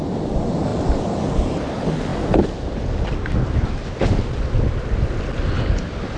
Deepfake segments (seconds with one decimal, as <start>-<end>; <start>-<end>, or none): none